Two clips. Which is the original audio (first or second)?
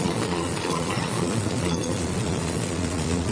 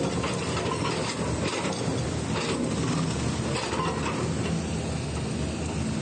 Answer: second